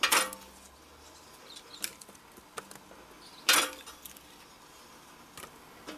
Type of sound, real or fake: real